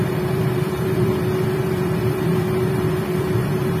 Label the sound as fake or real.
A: fake